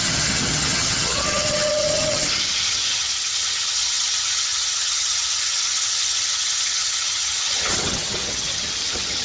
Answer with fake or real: fake